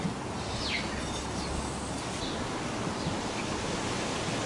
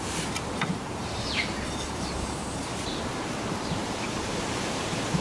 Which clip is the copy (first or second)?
second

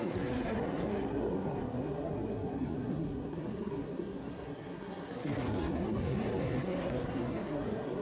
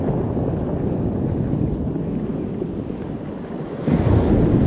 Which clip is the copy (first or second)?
first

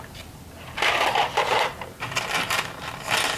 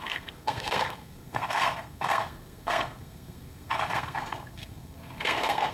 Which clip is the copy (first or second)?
second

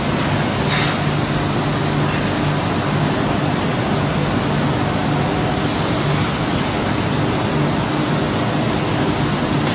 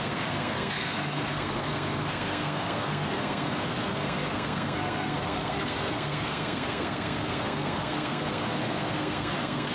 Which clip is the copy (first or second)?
second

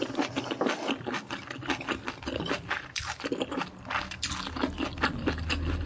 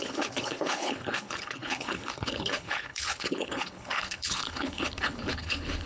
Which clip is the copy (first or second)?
second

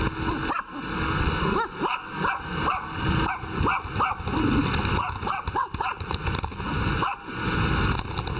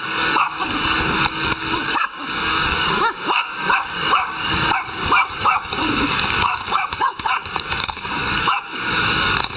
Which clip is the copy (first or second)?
second